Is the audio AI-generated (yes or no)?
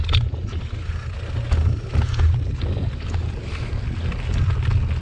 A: no